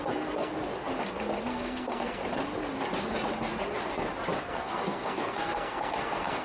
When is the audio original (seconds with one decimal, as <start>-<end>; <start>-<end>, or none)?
0.5-1.5; 2.2-4.4